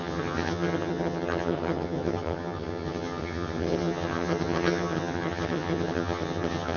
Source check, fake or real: fake